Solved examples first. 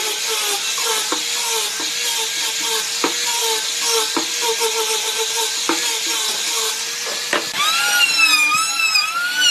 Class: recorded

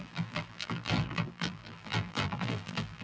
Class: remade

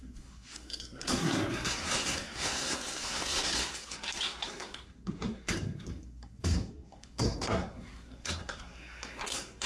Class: remade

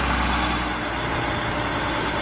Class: recorded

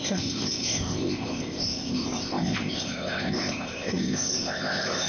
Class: remade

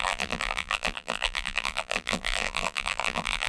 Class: remade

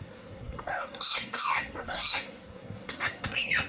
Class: remade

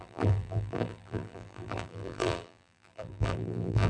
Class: remade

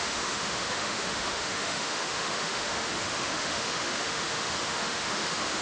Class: remade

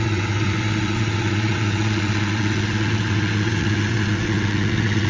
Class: remade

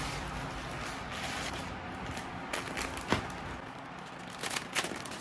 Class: recorded